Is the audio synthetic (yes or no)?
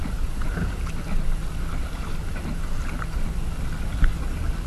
no